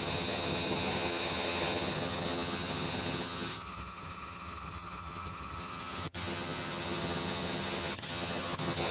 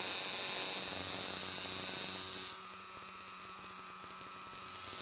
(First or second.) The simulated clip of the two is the first